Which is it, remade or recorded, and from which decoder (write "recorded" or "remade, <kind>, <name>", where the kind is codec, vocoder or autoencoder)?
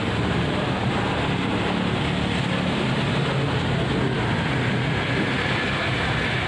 recorded